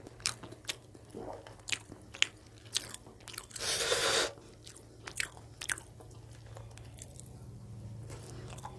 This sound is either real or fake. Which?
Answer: real